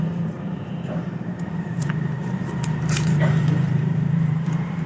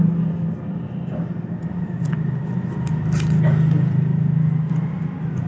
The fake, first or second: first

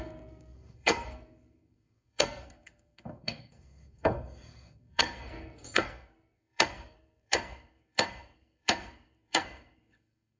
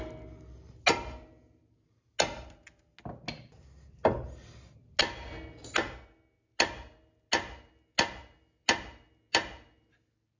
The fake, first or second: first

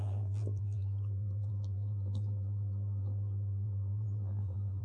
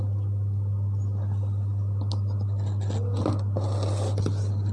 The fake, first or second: first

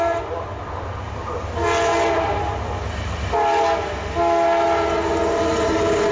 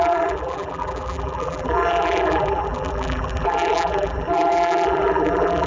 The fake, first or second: second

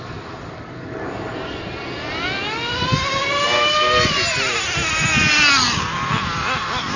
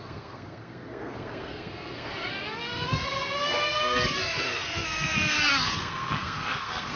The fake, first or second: second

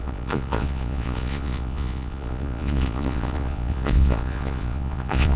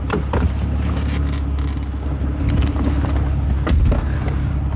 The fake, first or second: first